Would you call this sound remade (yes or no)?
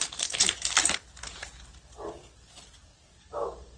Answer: no